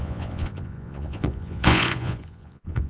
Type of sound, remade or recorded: remade